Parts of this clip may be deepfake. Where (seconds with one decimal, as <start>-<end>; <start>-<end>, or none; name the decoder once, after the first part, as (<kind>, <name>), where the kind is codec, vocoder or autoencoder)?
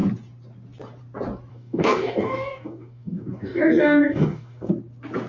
1.5-4.7 (codec, DAC)